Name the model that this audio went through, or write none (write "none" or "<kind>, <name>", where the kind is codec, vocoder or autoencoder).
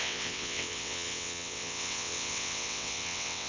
vocoder, WaveNeXt